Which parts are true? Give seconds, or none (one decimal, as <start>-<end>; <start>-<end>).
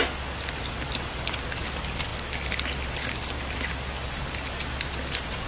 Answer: 0.0-5.5